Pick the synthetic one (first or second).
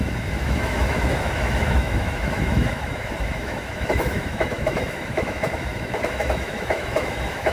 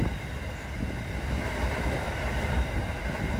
first